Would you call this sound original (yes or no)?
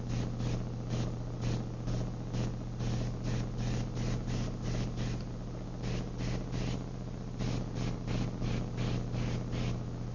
yes